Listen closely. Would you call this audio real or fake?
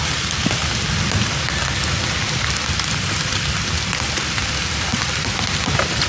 real